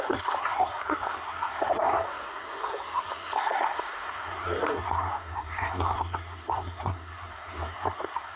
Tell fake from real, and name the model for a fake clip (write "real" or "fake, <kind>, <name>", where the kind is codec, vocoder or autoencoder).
fake, codec, SNAC